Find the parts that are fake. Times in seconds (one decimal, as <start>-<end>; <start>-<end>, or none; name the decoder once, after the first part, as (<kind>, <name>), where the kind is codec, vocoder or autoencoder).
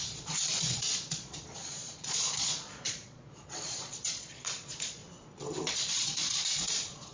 0.0-5.0 (vocoder, Vocos); 5.7-7.1